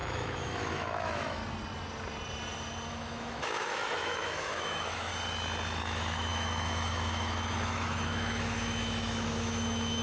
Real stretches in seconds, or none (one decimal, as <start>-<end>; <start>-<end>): 1.4-2.9; 5.1-5.8